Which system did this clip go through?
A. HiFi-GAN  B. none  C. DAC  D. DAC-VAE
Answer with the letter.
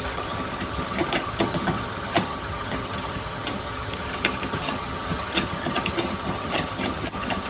A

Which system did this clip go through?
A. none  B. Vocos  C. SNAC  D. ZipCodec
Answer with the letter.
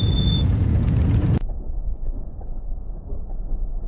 B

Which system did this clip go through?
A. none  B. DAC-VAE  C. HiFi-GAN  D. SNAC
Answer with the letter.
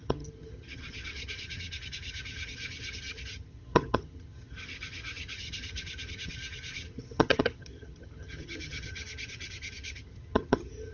C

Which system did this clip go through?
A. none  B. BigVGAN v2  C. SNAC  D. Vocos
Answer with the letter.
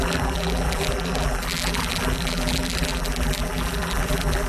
B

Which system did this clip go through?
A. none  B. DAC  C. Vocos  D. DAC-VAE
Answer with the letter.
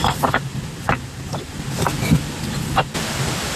A